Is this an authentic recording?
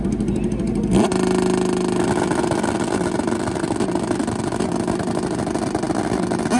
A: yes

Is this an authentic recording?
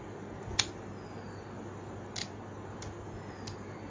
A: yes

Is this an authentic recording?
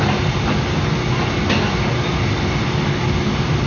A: yes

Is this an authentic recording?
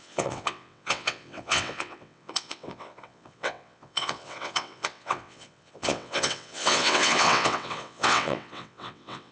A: no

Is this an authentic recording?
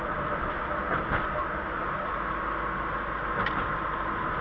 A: yes